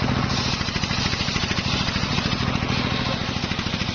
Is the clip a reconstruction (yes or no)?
no